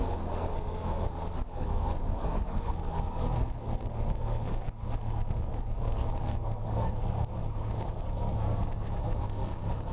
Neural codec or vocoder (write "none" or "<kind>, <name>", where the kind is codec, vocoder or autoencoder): codec, SNAC